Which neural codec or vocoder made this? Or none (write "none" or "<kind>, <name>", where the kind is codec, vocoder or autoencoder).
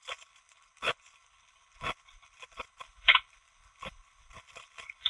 codec, HILCodec